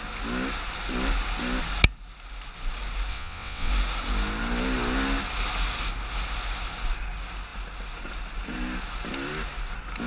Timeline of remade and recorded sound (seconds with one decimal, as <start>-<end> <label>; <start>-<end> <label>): 0.0-3.1 recorded; 3.1-3.7 remade; 3.7-10.1 recorded